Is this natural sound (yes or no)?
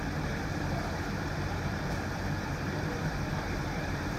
no